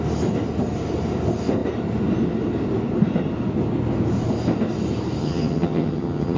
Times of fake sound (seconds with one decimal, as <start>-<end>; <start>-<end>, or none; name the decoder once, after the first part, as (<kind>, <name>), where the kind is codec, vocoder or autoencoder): 5.2-6.4 (vocoder, HiFi-GAN)